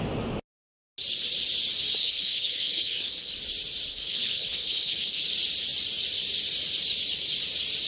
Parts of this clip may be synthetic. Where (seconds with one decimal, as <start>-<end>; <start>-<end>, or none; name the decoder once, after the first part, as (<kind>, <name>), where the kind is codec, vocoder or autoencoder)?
2.0-3.3 (codec, HILCodec); 3.9-5.2